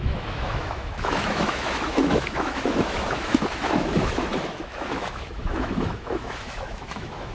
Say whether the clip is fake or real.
fake